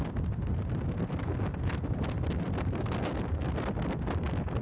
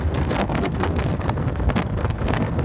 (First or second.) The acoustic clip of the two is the first